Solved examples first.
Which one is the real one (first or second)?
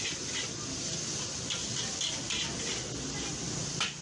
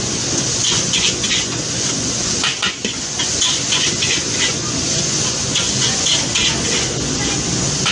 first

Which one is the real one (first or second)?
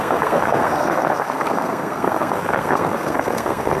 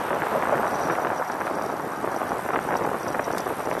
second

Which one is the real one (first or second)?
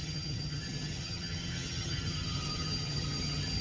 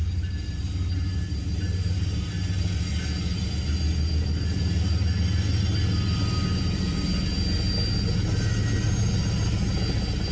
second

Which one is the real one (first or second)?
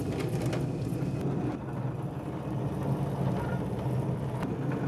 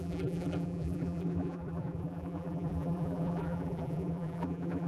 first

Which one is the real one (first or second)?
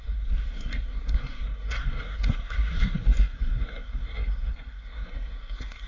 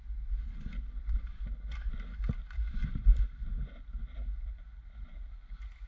second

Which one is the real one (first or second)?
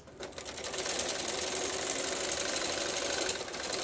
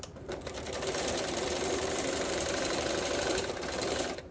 first